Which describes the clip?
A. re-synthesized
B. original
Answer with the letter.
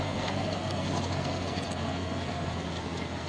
A